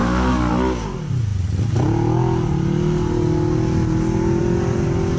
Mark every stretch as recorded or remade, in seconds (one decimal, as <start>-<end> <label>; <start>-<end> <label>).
0.0-0.5 remade; 0.5-5.2 recorded